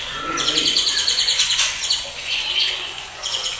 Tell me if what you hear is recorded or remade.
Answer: remade